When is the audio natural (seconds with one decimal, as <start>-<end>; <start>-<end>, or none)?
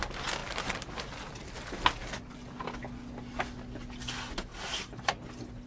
0.0-5.7